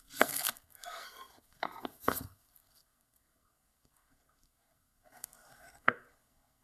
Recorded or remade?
remade